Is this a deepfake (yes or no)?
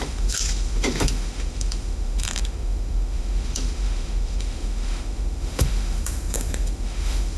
yes